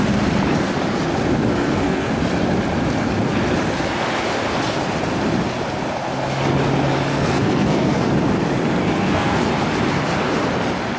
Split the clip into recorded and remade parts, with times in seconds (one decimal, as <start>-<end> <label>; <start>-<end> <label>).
0.0-1.5 recorded; 1.5-2.1 remade; 2.1-7.1 recorded; 7.1-8.0 remade; 8.0-8.8 recorded; 8.8-9.4 remade; 9.4-11.0 recorded

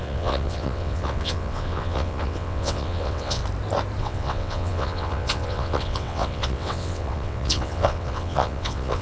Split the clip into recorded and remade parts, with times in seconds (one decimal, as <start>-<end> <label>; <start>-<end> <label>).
0.0-3.4 remade; 3.4-4.0 recorded; 4.0-9.0 remade

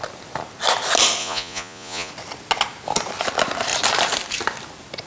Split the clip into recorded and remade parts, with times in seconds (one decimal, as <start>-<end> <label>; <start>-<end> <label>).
0.0-1.2 recorded; 1.2-2.1 remade; 2.1-5.1 recorded

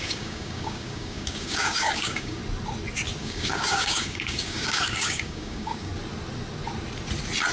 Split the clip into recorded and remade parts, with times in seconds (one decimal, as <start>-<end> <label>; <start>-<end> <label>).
0.0-2.4 remade; 2.4-3.2 recorded; 3.2-5.9 remade; 5.9-7.5 recorded

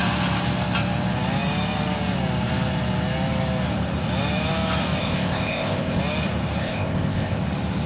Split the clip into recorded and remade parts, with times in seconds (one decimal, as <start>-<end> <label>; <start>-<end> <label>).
0.0-5.0 recorded; 5.0-6.0 remade; 6.0-6.6 recorded; 6.6-7.4 remade; 7.4-7.9 recorded

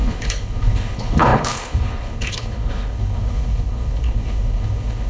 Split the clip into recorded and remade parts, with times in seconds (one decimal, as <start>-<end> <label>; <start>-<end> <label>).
0.0-5.1 remade